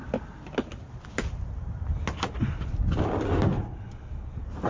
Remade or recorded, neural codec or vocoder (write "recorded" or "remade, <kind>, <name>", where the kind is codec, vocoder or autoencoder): recorded